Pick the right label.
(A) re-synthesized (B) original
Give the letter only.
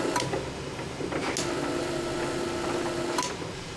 B